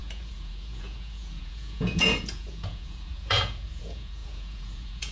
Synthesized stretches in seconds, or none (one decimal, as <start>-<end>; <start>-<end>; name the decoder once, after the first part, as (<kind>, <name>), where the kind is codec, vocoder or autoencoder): 0.0-5.1 (vocoder, Vocos)